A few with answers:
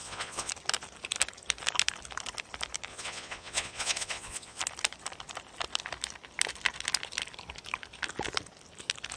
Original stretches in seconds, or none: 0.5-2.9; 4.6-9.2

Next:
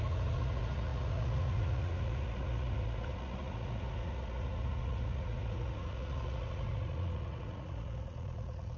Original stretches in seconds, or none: none

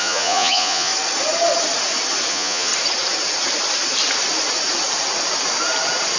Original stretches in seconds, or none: 0.9-2.3; 2.7-6.2

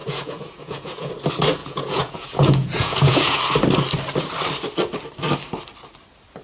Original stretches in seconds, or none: 1.1-1.6; 3.4-6.4

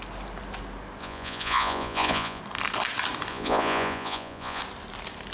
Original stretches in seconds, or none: 0.0-1.0; 2.4-3.3; 4.6-5.3

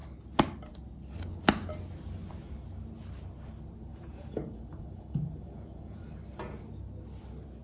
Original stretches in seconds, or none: 0.0-3.9; 6.1-7.6